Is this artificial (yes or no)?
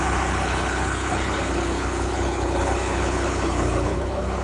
yes